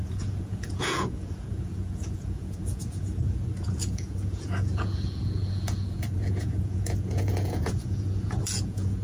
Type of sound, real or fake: fake